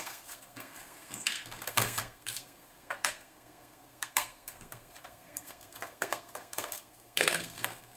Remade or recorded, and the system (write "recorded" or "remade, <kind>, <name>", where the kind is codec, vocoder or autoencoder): remade, codec, SNAC